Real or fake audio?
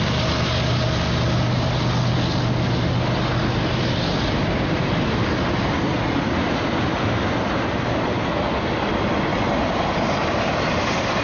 real